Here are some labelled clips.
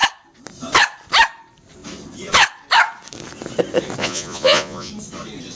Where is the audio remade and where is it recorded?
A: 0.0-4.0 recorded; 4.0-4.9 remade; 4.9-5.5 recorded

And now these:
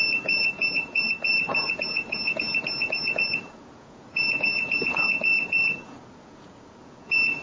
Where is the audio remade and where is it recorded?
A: 0.0-7.4 remade